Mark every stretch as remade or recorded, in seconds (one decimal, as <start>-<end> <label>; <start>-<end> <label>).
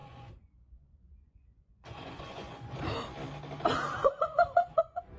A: 0.0-2.8 remade; 2.8-4.0 recorded; 4.0-5.2 remade